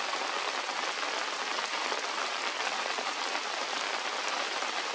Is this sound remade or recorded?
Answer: recorded